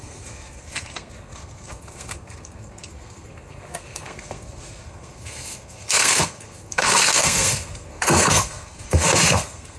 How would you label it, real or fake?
fake